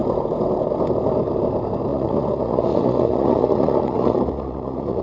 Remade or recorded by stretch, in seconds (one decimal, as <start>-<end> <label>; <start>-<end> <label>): 0.0-1.9 recorded; 1.9-5.0 remade